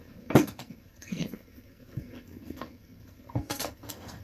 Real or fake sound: fake